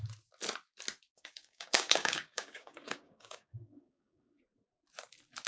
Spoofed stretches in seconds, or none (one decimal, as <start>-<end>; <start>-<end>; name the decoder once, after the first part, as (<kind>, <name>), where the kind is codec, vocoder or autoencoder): 1.1-4.4 (codec, DAC)